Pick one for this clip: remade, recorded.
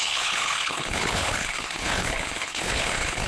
remade